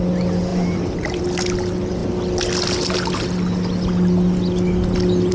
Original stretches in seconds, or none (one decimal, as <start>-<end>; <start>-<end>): 0.0-0.5; 1.2-5.3